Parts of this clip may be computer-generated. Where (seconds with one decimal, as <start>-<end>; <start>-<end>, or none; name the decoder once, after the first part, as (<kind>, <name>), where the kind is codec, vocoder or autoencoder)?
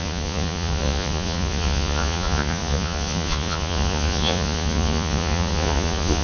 0.0-6.2 (vocoder, Vocos)